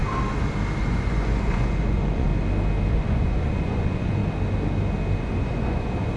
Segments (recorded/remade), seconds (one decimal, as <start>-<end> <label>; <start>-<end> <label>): 0.0-0.8 recorded; 0.8-2.3 remade; 2.3-2.9 recorded; 2.9-4.2 remade; 4.2-5.2 recorded; 5.2-6.2 remade